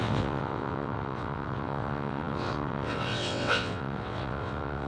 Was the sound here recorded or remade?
remade